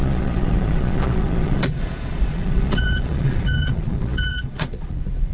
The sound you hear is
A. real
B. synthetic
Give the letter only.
B